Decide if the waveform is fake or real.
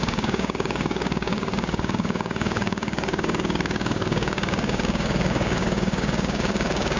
fake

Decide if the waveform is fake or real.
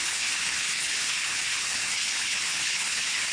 fake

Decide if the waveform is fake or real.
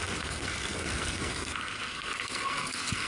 fake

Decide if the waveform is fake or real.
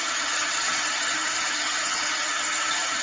fake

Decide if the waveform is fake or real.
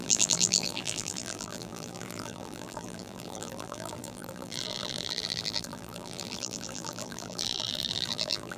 fake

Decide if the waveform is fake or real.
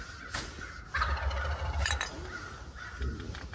real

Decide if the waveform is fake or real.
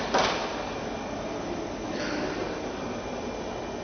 real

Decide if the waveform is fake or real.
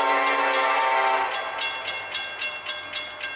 real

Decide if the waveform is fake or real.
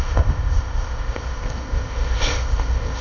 fake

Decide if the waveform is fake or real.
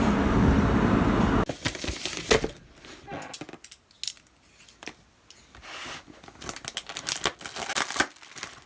real